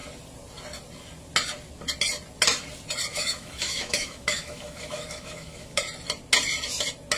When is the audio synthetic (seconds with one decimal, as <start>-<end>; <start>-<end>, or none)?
3.1-5.8